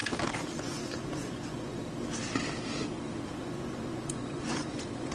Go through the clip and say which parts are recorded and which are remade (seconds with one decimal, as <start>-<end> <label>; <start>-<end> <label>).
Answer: 0.0-0.6 recorded; 0.6-1.8 remade; 1.8-3.3 recorded; 3.3-5.1 remade